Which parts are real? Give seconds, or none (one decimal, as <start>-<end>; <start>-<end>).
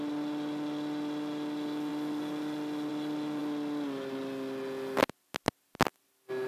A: 0.0-6.5